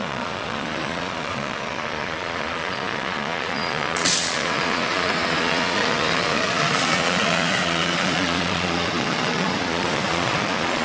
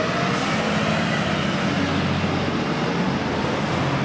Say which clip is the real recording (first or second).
second